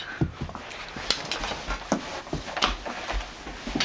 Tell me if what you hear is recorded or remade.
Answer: recorded